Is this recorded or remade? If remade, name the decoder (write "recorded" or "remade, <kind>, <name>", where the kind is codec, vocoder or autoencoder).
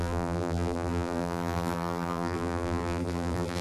remade, vocoder, BigVGAN v2